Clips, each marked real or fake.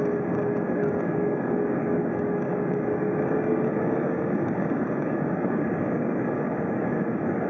fake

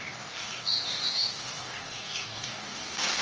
fake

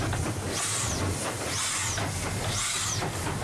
real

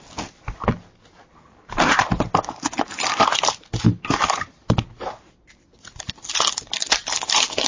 real